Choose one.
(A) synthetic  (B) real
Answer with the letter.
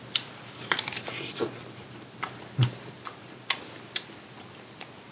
B